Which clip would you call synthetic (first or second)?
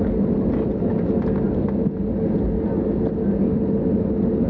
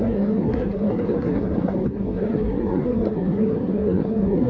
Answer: second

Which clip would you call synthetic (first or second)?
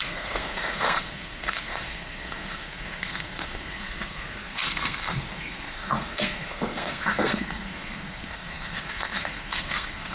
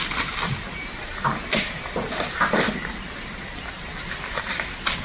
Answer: first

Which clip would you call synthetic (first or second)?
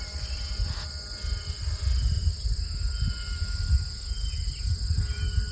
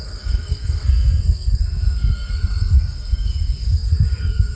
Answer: second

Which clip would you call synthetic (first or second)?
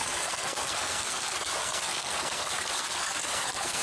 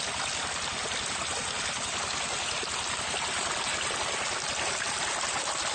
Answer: first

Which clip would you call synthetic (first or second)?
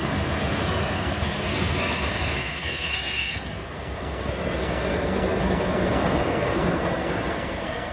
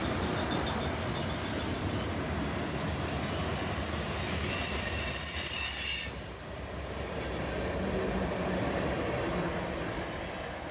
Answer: first